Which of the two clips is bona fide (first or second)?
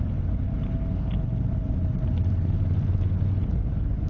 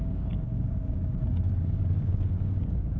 first